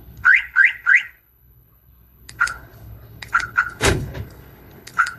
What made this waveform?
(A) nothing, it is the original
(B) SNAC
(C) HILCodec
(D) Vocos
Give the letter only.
C